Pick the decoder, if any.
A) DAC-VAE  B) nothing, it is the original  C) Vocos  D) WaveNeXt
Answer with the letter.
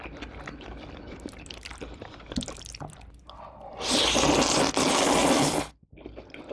B